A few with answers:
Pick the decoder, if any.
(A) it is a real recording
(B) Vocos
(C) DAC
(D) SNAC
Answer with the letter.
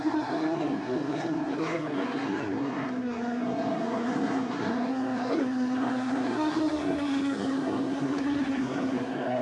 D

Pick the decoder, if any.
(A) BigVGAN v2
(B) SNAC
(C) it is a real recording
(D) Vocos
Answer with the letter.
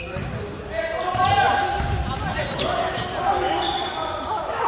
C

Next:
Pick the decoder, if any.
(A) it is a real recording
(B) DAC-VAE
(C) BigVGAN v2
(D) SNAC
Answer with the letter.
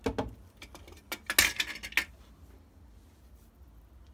A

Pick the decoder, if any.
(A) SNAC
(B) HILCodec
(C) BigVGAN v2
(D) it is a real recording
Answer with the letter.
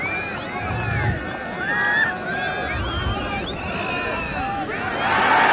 D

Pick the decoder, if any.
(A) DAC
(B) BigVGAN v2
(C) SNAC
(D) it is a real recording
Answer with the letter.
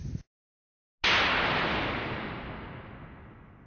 D